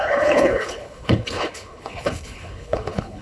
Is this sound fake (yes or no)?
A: yes